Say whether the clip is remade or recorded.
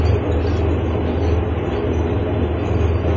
recorded